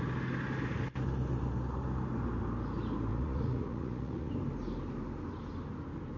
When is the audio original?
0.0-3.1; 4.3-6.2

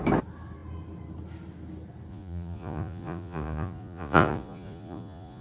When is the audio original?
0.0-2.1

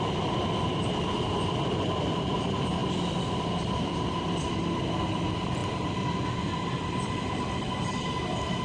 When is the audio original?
0.0-8.6

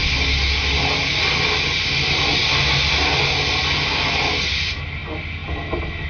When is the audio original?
0.0-6.1

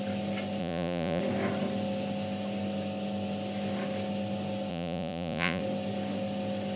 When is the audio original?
0.0-0.6; 1.2-4.7; 5.6-6.8

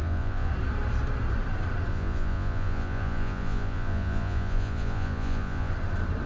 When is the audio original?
0.5-1.9; 5.7-6.3

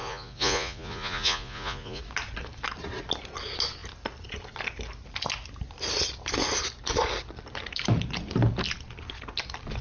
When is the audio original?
2.0-9.8